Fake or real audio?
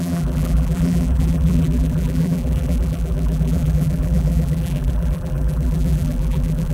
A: fake